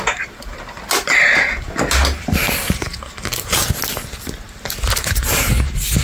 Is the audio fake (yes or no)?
no